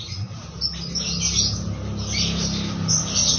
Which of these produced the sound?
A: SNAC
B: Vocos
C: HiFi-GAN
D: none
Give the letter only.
D